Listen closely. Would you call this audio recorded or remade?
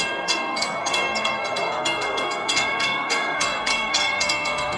remade